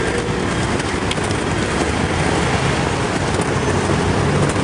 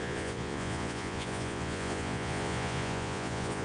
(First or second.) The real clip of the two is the first